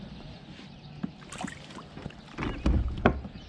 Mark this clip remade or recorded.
recorded